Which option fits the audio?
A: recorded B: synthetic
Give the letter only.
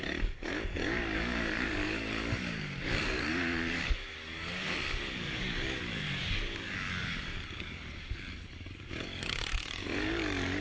B